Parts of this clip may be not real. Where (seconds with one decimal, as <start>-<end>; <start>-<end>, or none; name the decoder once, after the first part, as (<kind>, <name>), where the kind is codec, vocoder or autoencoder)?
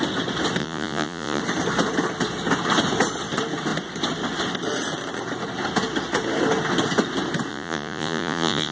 0.6-1.4 (vocoder, Vocos); 7.5-8.7